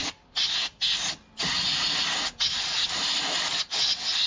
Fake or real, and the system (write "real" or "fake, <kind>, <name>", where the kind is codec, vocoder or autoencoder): real